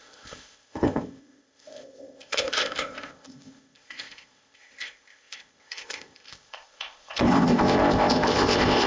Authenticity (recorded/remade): remade